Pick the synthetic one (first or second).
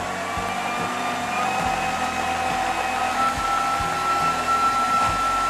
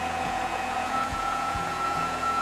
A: second